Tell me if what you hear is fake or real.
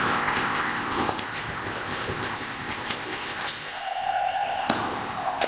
fake